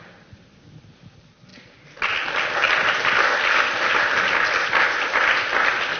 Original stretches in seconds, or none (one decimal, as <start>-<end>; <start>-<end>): 0.0-6.0